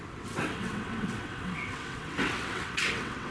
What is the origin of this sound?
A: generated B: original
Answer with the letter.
A